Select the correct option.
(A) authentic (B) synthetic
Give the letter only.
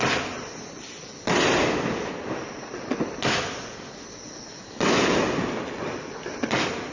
A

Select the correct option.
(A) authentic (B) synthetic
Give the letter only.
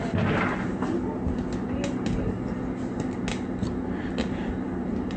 A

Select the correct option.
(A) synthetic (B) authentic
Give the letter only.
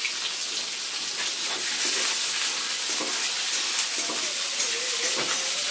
B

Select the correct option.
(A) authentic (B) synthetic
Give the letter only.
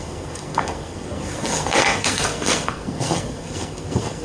B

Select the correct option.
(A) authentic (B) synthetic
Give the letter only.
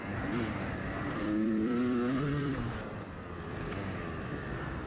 B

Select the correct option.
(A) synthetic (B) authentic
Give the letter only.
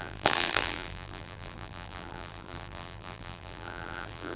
A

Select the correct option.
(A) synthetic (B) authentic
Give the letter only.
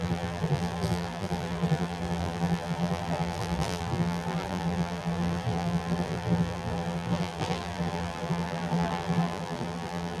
A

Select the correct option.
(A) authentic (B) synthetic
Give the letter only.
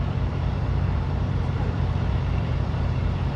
B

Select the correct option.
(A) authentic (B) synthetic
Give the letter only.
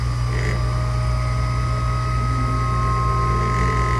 A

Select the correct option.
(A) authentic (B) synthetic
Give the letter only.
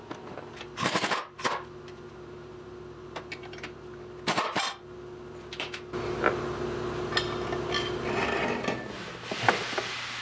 A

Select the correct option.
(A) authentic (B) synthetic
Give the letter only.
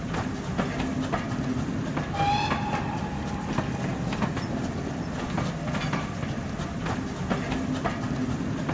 A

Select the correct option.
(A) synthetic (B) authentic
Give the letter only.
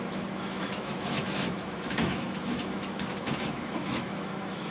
A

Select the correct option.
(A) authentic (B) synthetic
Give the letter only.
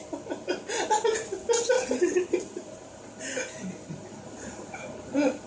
A